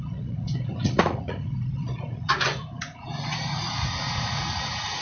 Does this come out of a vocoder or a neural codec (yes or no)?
yes